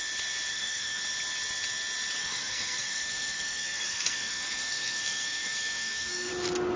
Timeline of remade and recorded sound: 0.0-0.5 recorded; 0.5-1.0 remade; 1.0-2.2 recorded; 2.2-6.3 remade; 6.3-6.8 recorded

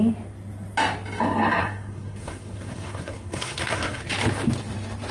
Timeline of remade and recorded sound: 0.0-1.6 recorded; 1.6-4.1 remade; 4.1-5.1 recorded

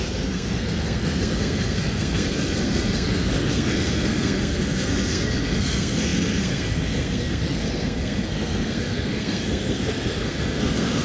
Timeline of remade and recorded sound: 0.0-11.0 remade

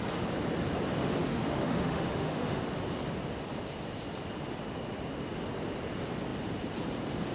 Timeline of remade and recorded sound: 0.0-1.2 recorded; 1.2-2.6 remade; 2.6-7.3 recorded

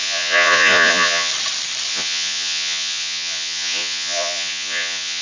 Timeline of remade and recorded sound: 0.0-1.3 remade; 1.3-1.9 recorded; 1.9-5.2 remade